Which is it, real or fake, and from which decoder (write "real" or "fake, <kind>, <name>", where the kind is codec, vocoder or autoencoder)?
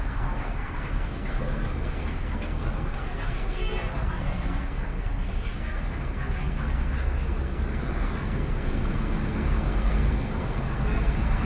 fake, codec, SNAC